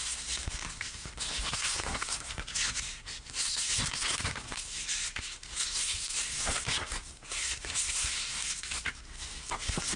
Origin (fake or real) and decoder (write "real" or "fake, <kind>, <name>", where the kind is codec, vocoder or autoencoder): fake, codec, SNAC